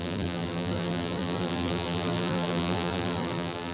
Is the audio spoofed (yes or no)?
yes